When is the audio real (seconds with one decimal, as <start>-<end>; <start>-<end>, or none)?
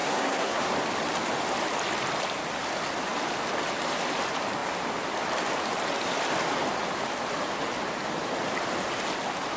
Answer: 0.7-9.6